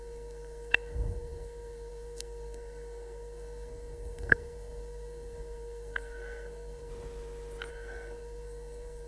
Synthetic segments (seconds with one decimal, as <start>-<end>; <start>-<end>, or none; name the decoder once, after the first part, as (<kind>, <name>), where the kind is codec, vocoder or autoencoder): 0.0-6.9 (codec, SNAC); 7.7-9.1